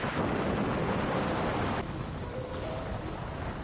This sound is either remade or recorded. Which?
remade